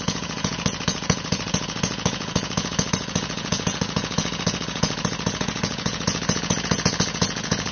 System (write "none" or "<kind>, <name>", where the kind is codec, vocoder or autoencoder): vocoder, Vocos